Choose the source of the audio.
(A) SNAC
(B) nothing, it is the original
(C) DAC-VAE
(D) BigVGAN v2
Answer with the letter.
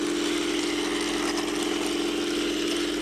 B